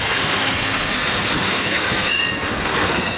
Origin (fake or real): fake